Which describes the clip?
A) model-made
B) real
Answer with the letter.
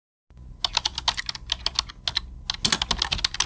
B